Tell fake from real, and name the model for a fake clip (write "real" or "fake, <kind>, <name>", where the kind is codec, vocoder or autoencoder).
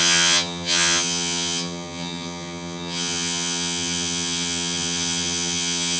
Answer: fake, vocoder, HiFi-GAN